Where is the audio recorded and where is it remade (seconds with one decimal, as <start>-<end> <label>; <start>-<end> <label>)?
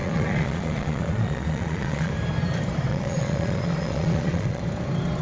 0.0-2.1 remade; 2.1-2.9 recorded; 2.9-4.6 remade; 4.6-5.2 recorded